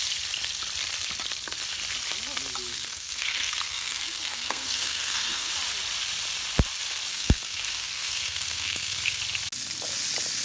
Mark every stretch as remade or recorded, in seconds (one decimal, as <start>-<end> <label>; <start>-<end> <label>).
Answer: 0.0-2.7 recorded; 2.7-5.5 remade; 5.5-7.1 recorded; 7.1-9.2 remade; 9.2-10.4 recorded